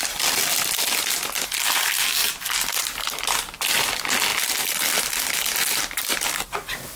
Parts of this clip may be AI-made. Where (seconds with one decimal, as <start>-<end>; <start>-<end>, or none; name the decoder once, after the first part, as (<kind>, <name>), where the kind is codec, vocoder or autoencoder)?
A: 0.5-1.1 (vocoder, BigVGAN v2); 6.0-7.0